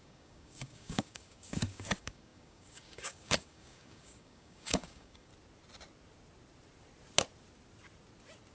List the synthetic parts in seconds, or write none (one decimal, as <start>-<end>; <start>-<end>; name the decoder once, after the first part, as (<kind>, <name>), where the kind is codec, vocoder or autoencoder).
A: 0.0-5.3 (codec, DAC)